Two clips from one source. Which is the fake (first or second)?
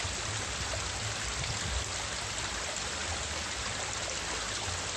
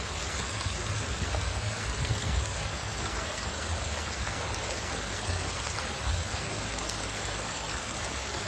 second